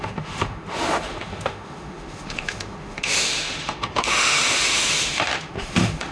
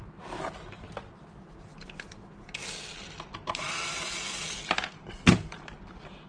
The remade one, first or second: first